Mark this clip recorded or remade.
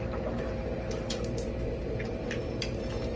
recorded